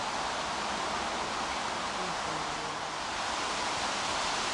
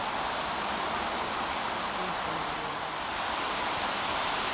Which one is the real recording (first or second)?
first